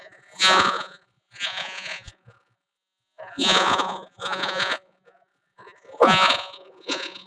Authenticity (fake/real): fake